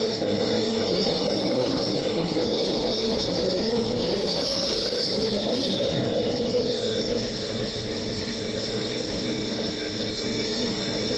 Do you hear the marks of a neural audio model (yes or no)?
yes